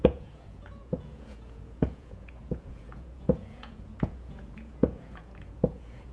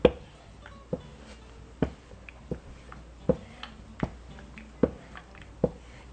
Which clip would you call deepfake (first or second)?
first